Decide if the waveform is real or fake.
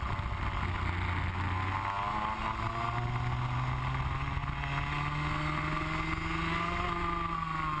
real